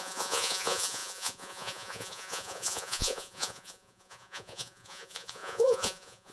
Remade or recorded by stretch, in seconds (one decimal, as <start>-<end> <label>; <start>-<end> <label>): 0.0-6.3 remade